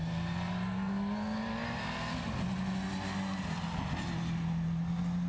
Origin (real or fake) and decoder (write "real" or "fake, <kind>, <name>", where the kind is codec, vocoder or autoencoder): real